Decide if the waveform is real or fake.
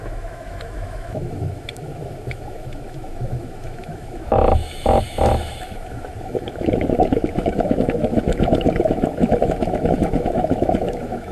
fake